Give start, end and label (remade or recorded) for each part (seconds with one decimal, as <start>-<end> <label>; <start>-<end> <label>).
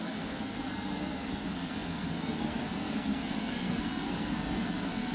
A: 0.0-5.1 remade